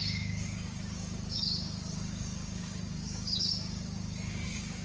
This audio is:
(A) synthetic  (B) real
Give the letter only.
A